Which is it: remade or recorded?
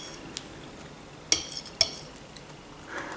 recorded